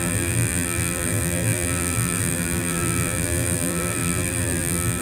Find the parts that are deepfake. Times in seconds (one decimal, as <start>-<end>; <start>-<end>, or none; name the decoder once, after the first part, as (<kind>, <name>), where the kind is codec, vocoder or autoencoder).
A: 0.0-5.0 (vocoder, BigVGAN v2)